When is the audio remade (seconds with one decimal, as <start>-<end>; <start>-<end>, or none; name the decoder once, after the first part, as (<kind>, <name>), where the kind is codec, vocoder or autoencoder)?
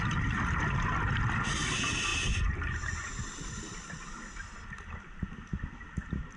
none